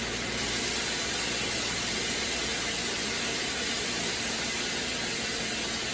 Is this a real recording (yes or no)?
yes